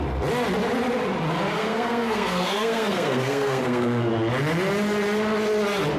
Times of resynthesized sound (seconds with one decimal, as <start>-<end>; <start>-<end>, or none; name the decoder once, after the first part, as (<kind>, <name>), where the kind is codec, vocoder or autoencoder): 1.6-4.1 (codec, SNAC)